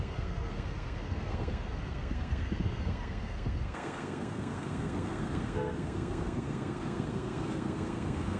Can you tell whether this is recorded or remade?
remade